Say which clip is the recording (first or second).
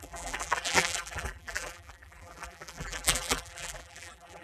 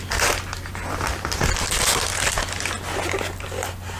second